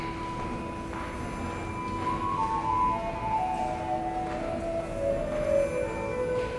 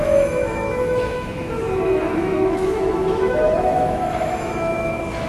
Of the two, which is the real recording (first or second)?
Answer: first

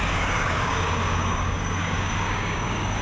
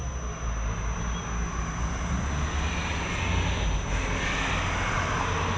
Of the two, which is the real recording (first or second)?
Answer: second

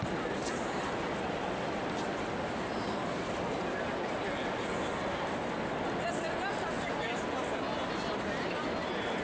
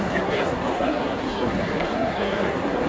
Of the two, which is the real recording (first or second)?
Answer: first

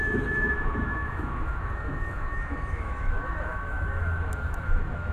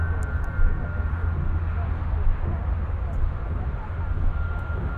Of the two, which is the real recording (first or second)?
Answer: second